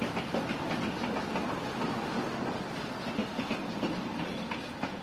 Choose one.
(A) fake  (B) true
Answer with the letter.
B